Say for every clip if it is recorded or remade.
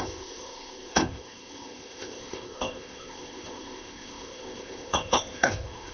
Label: remade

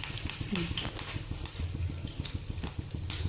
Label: recorded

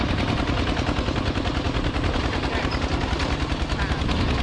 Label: recorded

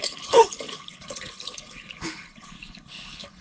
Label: remade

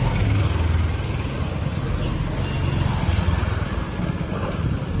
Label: recorded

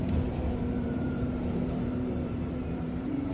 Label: remade